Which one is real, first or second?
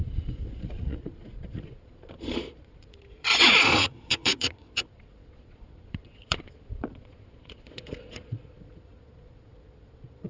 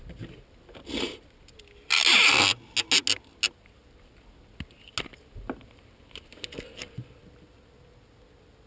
second